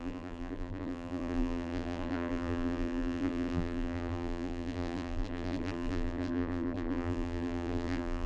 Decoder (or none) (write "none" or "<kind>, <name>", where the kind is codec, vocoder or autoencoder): vocoder, BigVGAN v2